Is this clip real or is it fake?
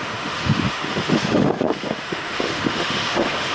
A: fake